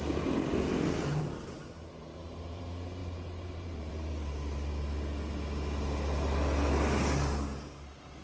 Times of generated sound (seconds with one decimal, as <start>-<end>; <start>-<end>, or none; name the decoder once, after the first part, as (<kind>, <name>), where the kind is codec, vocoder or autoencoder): 1.1-2.6 (vocoder, BigVGAN v2); 3.0-3.9